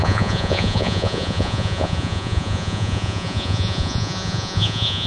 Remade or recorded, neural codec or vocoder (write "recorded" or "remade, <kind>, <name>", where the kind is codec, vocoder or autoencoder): remade, vocoder, Vocos